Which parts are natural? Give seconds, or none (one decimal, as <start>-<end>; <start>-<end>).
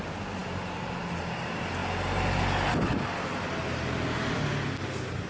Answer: 0.0-5.3